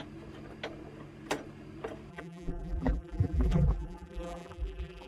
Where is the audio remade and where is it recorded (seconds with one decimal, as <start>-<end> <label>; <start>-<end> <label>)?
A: 0.0-2.1 recorded; 2.1-5.1 remade